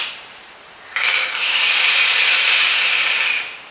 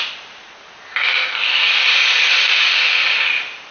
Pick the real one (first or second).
second